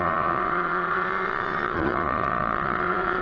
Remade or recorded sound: remade